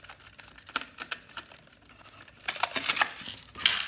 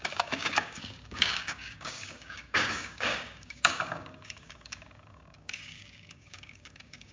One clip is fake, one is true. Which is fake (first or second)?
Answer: second